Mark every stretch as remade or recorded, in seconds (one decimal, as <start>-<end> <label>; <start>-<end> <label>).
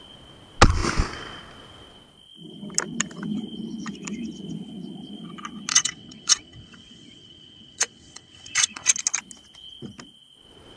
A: 0.0-5.7 recorded; 5.7-8.9 remade; 8.9-10.8 recorded